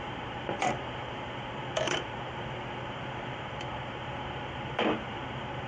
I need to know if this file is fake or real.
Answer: fake